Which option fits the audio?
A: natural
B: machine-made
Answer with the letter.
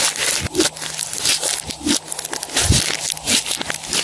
A